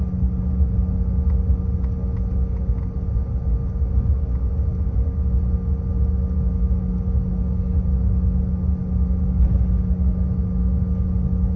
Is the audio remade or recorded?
recorded